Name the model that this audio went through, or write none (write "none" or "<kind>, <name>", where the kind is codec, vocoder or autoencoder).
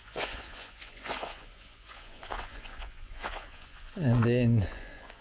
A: vocoder, Vocos